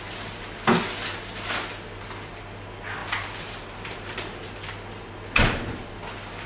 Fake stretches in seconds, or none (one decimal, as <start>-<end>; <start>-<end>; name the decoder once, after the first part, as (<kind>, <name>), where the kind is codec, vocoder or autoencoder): 3.0-4.7 (vocoder, BigVGAN v2)